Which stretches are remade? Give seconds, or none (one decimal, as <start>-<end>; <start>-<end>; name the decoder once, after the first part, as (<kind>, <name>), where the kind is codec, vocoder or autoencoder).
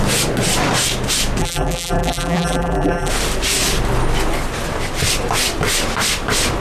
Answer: 1.4-3.1 (vocoder, BigVGAN v2)